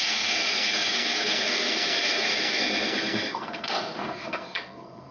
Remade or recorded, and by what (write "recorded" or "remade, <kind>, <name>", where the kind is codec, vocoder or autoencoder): remade, codec, SNAC